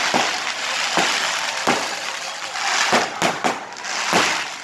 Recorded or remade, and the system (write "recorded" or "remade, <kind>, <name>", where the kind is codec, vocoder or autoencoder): recorded